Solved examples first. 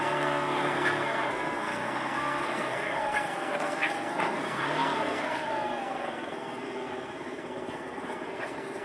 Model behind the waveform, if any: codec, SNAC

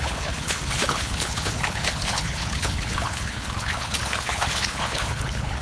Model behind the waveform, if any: codec, HILCodec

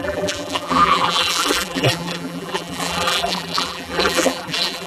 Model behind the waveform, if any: vocoder, BigVGAN v2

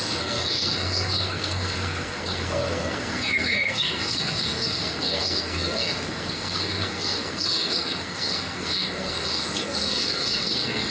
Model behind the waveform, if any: codec, SNAC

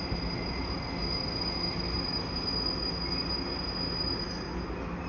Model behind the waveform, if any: none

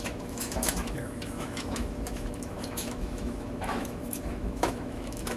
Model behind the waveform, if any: autoencoder, DAC-VAE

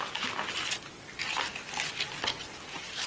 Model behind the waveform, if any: none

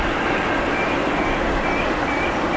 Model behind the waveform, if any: none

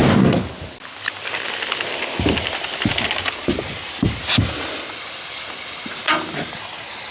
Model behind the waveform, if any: none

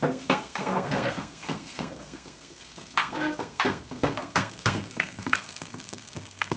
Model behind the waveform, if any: codec, SNAC